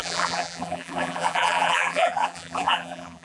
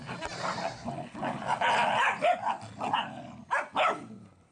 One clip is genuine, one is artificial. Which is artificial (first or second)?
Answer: first